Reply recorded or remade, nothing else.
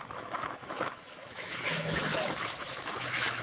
remade